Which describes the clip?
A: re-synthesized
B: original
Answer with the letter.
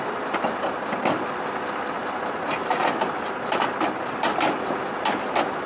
B